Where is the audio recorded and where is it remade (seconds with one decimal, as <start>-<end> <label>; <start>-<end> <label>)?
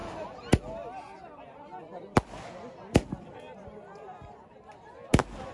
0.0-5.5 recorded